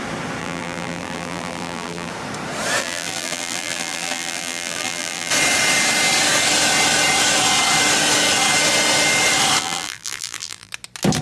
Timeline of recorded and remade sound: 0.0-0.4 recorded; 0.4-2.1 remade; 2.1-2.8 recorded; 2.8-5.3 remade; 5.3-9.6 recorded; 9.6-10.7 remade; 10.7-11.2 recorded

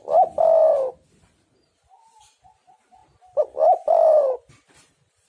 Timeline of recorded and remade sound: 0.0-0.6 recorded; 0.6-2.3 remade; 2.3-3.0 recorded; 3.0-5.3 remade

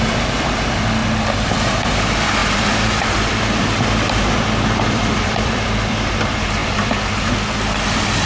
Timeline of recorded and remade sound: 0.0-1.0 remade; 1.0-1.6 recorded; 1.6-6.6 remade; 6.6-7.9 recorded; 7.9-8.3 remade

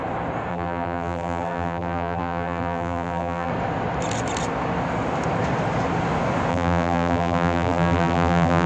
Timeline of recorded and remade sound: 0.0-0.5 recorded; 0.5-3.5 remade; 3.5-6.5 recorded; 6.5-8.7 remade

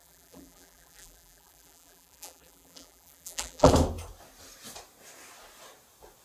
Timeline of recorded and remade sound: 0.0-3.7 remade; 3.7-6.2 recorded

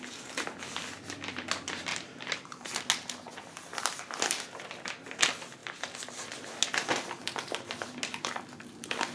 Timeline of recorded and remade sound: 0.0-1.9 recorded; 1.9-2.8 remade; 2.8-9.1 recorded

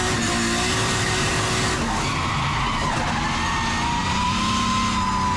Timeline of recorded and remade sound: 0.0-0.8 recorded; 0.8-1.3 remade; 1.3-4.0 recorded; 4.0-4.7 remade; 4.7-5.4 recorded